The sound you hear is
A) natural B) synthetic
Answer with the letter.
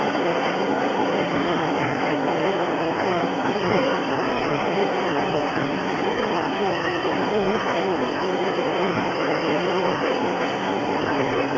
B